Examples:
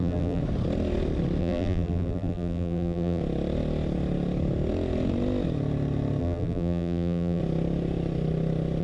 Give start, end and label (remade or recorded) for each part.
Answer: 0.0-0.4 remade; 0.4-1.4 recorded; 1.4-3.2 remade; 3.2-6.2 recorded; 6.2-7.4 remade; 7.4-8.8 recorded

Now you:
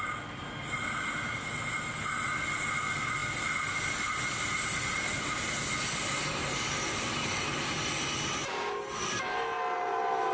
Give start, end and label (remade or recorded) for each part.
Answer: 0.0-10.3 recorded

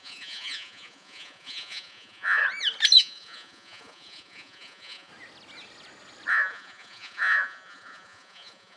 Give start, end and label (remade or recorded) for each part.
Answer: 0.0-2.4 remade; 2.4-3.0 recorded; 3.0-5.1 remade; 5.1-6.3 recorded; 6.3-8.8 remade

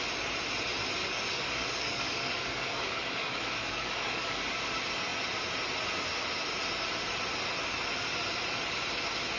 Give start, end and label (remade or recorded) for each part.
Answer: 0.0-1.0 recorded; 1.0-4.4 remade; 4.4-9.4 recorded

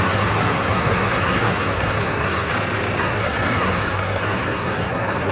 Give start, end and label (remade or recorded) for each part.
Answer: 0.0-2.5 remade; 2.5-3.0 recorded; 3.0-5.3 remade